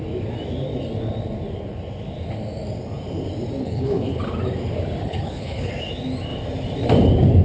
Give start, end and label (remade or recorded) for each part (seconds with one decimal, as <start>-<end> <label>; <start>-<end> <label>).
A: 0.0-3.6 recorded; 3.6-4.2 remade; 4.2-5.0 recorded; 5.0-5.7 remade; 5.7-7.4 recorded